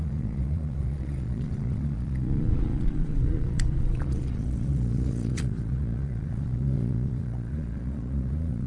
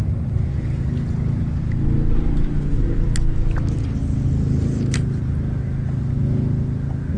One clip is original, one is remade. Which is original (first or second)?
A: second